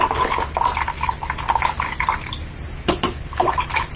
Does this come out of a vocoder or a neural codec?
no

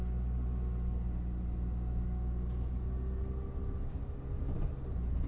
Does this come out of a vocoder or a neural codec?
no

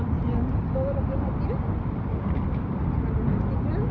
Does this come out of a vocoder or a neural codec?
no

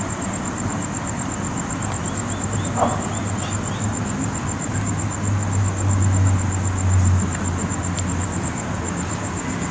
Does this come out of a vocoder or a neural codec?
no